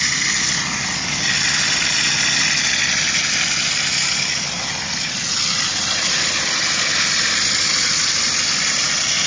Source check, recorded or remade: recorded